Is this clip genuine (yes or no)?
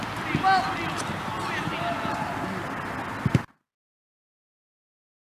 yes